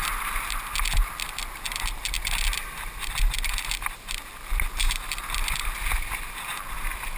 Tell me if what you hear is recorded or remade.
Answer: recorded